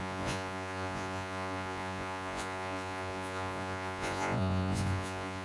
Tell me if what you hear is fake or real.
fake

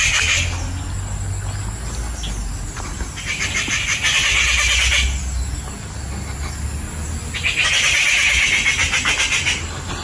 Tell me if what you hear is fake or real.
real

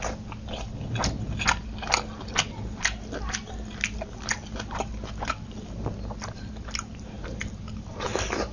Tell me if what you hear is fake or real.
real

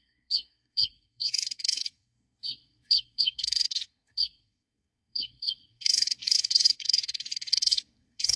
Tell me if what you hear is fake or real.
fake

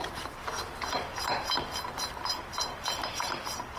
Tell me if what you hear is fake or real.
real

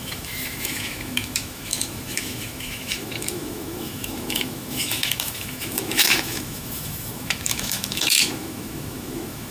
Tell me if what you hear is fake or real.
fake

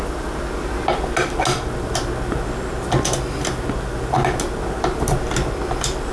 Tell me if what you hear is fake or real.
real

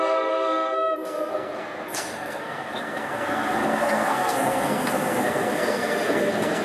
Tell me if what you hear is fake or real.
fake